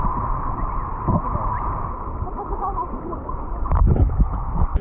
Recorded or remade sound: remade